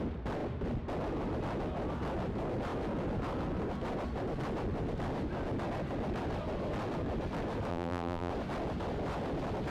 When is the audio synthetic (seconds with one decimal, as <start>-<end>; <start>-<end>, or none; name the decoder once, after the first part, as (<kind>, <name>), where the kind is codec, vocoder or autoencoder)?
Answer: 7.7-8.3 (vocoder, BigVGAN v2)